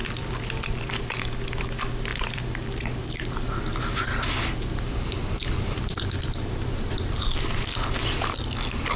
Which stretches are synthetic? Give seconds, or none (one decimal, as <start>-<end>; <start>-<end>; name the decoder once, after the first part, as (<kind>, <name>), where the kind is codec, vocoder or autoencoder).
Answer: 0.0-1.0 (vocoder, BigVGAN v2); 2.1-6.9